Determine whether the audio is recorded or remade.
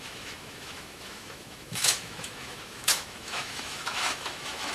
remade